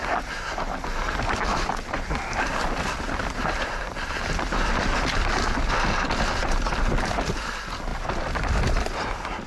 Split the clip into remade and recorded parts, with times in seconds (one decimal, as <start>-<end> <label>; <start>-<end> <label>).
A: 0.0-4.7 remade; 4.7-9.5 recorded